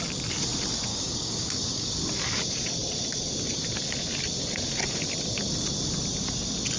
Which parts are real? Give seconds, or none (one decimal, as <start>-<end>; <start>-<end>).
0.0-0.9; 2.0-6.8

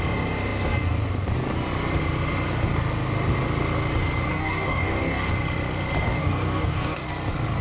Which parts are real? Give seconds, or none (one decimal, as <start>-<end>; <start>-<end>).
0.0-4.3; 5.3-6.1; 7.1-7.6

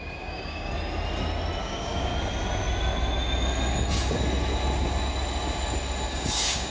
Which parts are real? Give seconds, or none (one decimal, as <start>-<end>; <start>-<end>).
0.7-1.6; 2.1-6.1